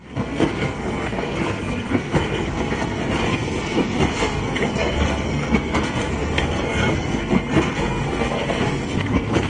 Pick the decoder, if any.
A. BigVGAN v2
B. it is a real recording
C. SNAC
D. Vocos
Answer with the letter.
C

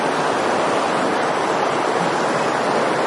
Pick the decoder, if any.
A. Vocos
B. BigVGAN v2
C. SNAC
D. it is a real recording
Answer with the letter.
D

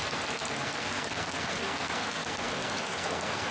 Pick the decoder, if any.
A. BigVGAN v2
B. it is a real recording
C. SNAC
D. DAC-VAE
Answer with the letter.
C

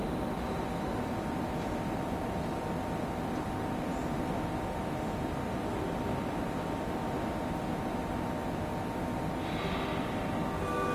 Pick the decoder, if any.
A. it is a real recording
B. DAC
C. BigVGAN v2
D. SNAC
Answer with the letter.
A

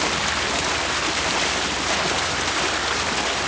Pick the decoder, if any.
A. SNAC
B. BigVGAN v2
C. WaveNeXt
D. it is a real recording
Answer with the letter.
D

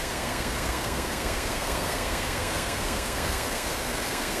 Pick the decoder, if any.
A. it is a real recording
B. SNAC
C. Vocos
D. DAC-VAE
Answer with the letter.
B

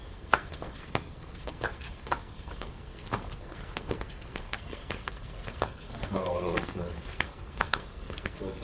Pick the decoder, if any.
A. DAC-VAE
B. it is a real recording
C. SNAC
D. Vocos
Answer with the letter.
C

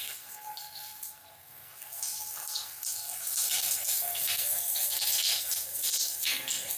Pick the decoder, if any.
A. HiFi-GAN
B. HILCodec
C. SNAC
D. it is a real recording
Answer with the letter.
C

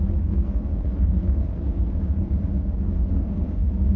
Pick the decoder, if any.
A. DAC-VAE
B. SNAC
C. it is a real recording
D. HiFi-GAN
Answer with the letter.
B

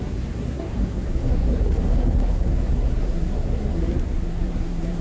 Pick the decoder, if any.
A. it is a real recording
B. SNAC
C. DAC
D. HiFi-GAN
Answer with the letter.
B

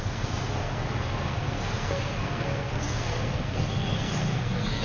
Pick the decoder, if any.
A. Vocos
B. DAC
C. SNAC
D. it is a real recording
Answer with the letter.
C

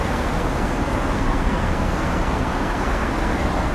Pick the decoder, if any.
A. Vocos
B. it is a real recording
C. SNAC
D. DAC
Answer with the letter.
C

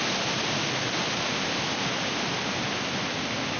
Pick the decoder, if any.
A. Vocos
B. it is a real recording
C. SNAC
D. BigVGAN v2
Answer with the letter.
B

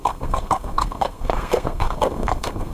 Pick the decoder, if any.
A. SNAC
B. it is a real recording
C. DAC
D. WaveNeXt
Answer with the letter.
A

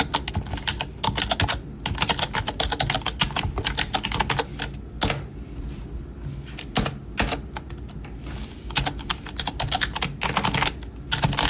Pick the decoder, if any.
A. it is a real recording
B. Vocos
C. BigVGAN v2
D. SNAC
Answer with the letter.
A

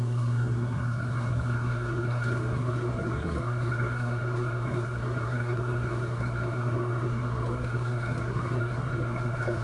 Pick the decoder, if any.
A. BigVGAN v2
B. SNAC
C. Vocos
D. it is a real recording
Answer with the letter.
B